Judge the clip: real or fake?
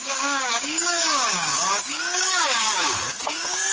fake